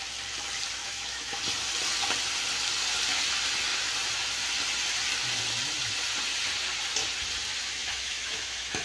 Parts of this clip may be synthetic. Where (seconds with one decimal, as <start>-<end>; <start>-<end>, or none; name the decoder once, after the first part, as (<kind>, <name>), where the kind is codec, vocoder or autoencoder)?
0.8-1.4 (autoencoder, DAC-VAE); 7.6-8.8